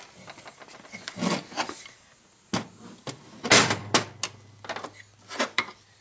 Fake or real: real